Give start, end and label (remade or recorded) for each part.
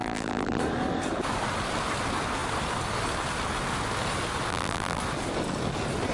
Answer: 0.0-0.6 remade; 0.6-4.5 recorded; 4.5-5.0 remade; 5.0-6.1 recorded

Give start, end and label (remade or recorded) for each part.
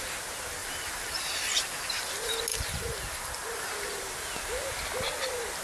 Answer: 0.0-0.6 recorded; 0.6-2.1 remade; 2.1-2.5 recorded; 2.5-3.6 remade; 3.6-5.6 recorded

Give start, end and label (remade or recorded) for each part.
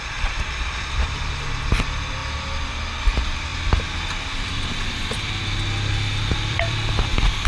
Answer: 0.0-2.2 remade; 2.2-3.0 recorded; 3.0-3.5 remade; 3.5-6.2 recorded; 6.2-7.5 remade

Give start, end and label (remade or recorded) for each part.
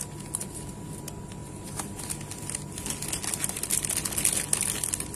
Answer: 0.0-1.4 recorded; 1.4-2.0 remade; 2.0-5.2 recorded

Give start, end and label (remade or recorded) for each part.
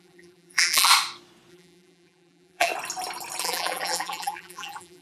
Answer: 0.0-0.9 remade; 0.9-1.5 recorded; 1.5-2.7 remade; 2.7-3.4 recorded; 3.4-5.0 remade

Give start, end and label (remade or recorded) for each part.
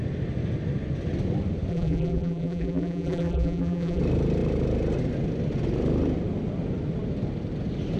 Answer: 0.0-1.7 recorded; 1.7-4.0 remade; 4.0-8.0 recorded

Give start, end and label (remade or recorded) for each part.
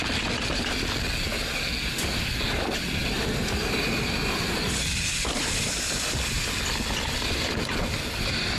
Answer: 0.0-5.1 recorded; 5.1-5.9 remade; 5.9-8.6 recorded